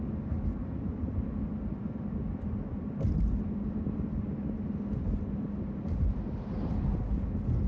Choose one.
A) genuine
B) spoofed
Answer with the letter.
A